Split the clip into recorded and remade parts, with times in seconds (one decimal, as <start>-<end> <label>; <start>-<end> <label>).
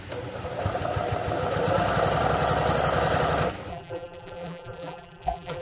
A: 0.0-3.7 recorded; 3.7-5.6 remade